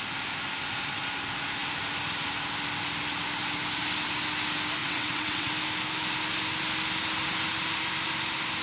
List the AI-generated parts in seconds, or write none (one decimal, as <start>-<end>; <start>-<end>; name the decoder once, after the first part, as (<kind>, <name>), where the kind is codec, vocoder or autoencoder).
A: 4.8-5.5 (vocoder, WaveNeXt)